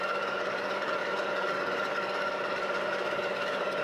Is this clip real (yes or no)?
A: no